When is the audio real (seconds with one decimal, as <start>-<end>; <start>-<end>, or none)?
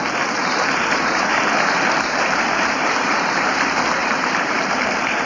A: 0.0-0.4; 3.6-4.0; 4.7-5.3